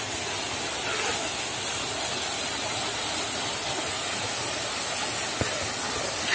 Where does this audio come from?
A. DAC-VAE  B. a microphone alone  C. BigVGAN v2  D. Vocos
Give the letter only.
B